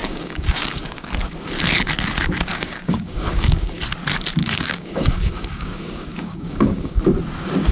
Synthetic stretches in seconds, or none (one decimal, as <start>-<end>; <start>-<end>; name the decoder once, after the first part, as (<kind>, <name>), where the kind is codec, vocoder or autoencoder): 0.0-1.1 (codec, DAC); 2.5-3.8; 4.4-7.0